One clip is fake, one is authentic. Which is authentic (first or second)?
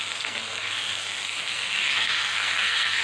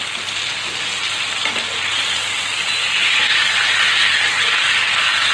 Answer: second